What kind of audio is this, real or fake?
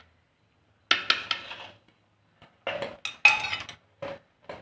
real